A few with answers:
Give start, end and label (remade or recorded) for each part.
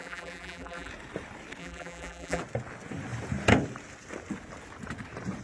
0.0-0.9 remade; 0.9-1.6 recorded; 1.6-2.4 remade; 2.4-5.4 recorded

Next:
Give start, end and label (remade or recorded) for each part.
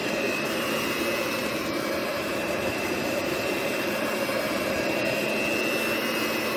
0.0-0.6 remade; 0.6-2.0 recorded; 2.0-4.7 remade; 4.7-6.6 recorded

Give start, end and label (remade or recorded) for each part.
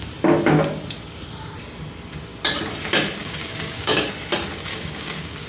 0.0-3.2 recorded; 3.2-4.1 remade; 4.1-4.7 recorded; 4.7-5.5 remade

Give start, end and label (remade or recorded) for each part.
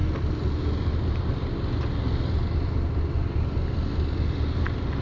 0.0-5.0 recorded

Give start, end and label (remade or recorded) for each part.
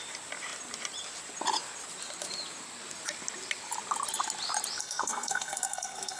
0.0-4.8 recorded; 4.8-6.2 remade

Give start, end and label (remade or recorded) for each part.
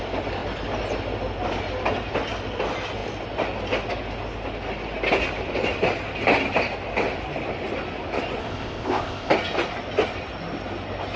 0.0-8.4 recorded; 8.4-9.3 remade; 9.3-11.2 recorded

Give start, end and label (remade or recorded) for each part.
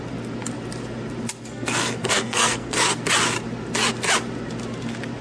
0.0-1.5 recorded; 1.5-3.0 remade; 3.0-5.2 recorded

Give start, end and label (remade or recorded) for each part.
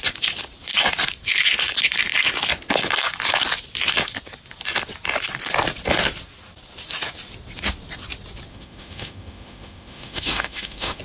0.0-8.5 recorded; 8.5-11.0 remade